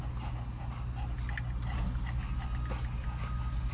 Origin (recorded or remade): recorded